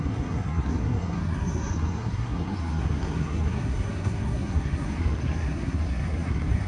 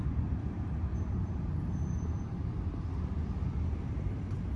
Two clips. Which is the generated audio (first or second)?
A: first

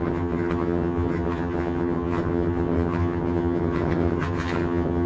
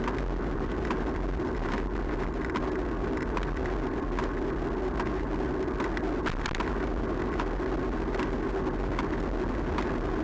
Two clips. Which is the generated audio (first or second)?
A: first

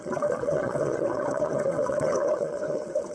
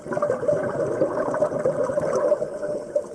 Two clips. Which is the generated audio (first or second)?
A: first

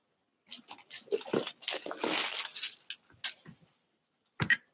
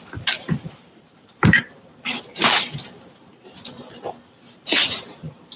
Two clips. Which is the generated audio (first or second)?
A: second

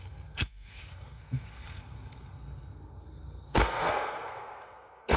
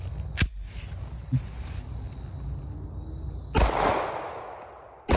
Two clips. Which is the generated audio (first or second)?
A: first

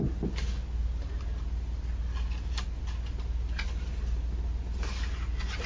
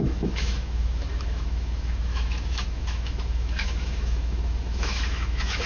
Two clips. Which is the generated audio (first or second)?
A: second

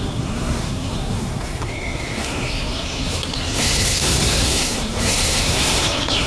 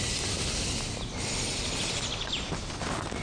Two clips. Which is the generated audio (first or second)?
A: first